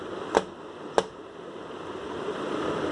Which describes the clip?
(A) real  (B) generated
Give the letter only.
A